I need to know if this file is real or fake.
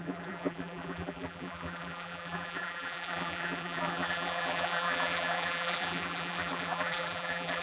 fake